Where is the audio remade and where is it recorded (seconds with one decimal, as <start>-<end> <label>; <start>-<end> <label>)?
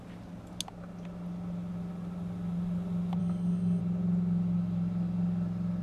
0.0-3.2 recorded; 3.2-3.8 remade; 3.8-5.8 recorded